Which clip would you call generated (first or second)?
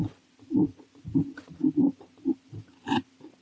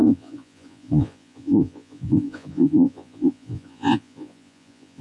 second